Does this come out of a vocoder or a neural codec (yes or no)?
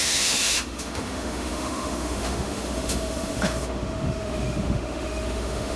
yes